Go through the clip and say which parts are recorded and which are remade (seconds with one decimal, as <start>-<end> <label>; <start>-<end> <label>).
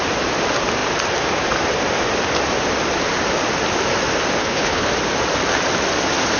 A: 0.0-4.4 recorded; 4.4-4.9 remade; 4.9-6.4 recorded